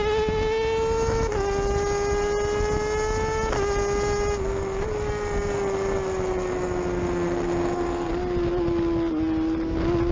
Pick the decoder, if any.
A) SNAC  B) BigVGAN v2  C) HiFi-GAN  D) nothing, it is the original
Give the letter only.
D